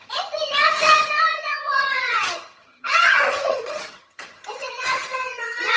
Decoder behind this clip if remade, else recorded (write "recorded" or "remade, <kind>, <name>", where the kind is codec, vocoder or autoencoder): remade, vocoder, HiFi-GAN